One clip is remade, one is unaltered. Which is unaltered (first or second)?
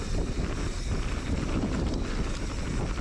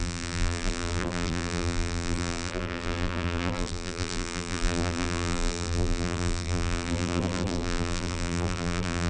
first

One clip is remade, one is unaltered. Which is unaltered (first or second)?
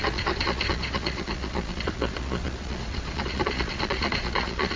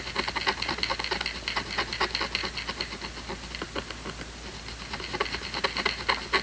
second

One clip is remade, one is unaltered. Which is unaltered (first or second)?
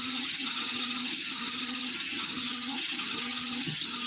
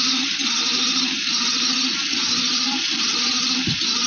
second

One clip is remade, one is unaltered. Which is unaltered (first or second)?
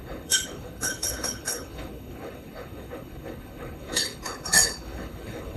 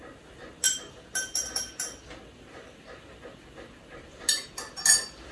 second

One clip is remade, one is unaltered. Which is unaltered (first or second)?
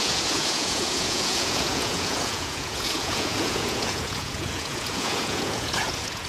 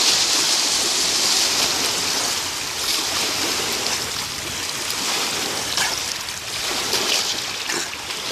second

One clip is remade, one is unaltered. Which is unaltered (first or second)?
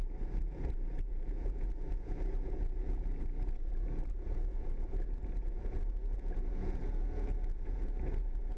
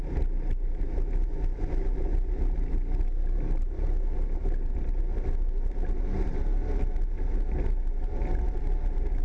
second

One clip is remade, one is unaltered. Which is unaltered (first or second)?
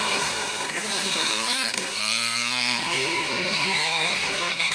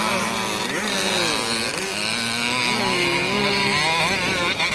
second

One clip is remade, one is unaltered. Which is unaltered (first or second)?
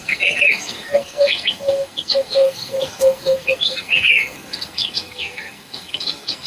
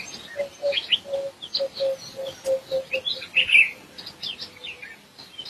second